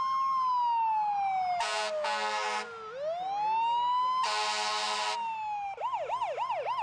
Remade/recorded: recorded